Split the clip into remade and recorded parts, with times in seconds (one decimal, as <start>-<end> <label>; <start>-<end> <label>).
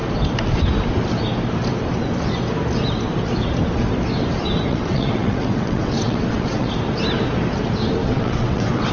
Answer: 0.0-4.7 recorded; 4.7-6.7 remade; 6.7-8.0 recorded; 8.0-8.9 remade